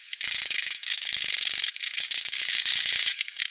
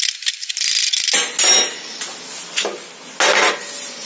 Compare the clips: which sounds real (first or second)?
second